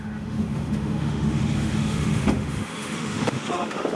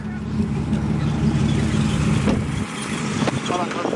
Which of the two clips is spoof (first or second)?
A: first